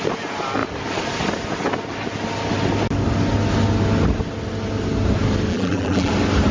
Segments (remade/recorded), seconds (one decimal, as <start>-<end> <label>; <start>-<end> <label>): 0.0-5.5 recorded; 5.5-6.1 remade; 6.1-6.5 recorded